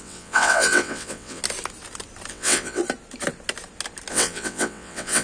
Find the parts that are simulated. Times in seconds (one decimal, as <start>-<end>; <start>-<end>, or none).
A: 0.0-1.4; 2.3-2.8; 4.1-5.2